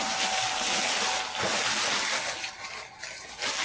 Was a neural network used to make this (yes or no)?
no